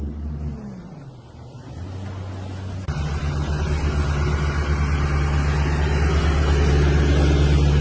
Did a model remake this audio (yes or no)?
no